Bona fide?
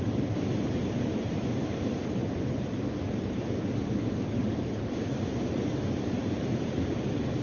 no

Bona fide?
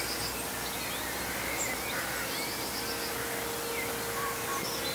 yes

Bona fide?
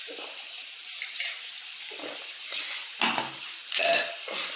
yes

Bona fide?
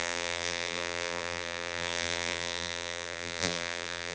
no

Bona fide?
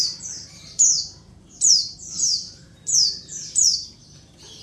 no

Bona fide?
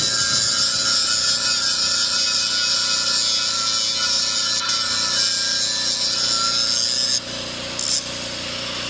yes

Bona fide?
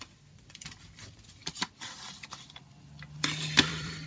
no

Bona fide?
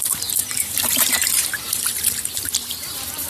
no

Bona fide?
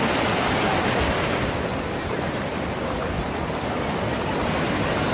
yes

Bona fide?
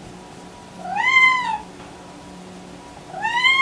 yes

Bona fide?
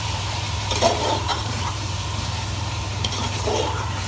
no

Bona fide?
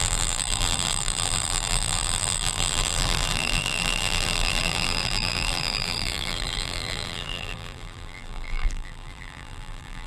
no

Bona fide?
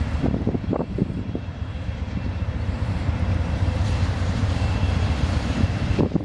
no